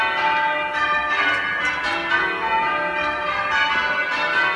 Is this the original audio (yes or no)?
yes